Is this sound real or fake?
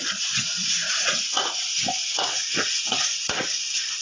fake